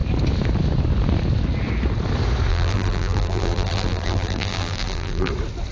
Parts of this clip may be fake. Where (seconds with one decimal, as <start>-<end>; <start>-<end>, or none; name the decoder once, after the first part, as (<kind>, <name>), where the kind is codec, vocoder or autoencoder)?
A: 2.5-5.3 (vocoder, BigVGAN v2)